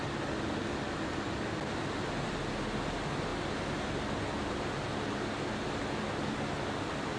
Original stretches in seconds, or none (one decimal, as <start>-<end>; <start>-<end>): 0.0-7.2